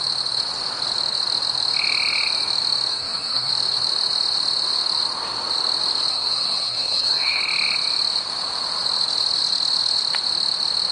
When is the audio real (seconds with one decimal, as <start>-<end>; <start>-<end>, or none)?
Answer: 0.0-2.9; 3.5-6.1; 7.4-10.9